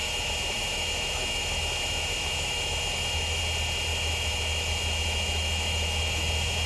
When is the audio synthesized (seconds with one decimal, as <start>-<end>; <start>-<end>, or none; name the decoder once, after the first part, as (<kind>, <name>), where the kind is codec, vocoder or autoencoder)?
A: 0.0-3.4 (autoencoder, DAC-VAE); 3.9-6.7